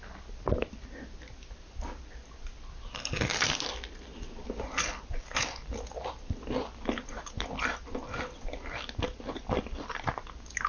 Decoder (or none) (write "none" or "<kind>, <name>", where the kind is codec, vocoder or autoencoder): none